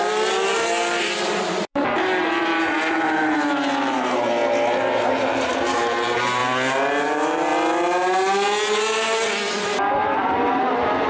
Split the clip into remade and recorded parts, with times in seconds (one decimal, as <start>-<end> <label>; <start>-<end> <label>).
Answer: 0.0-4.4 remade; 4.4-5.2 recorded; 5.2-6.4 remade; 6.4-6.9 recorded; 6.9-7.5 remade; 7.5-10.6 recorded; 10.6-11.1 remade